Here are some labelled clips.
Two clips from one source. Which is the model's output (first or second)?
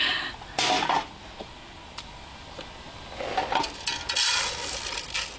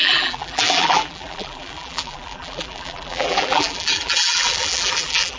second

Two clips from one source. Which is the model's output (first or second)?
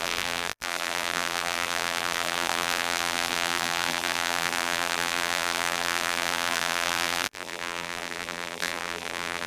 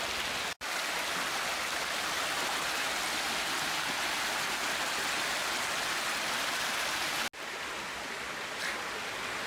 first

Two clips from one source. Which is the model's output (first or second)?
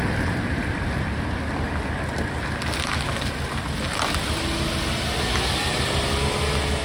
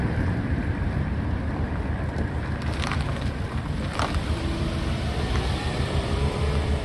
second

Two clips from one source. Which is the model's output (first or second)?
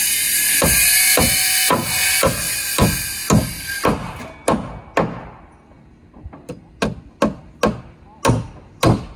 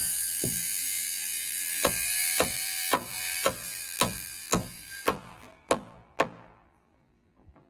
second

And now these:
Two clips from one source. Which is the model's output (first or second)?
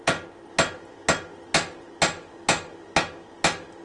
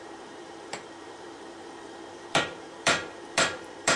second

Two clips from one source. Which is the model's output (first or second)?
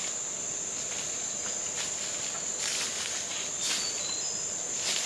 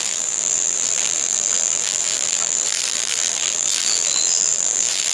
second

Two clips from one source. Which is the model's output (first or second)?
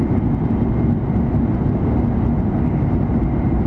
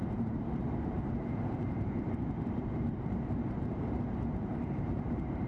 second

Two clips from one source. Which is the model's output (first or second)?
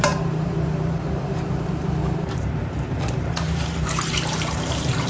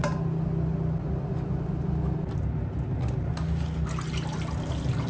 first